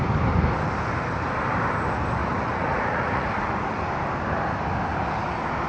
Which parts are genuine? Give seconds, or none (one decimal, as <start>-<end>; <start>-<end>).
0.0-2.2; 3.9-5.7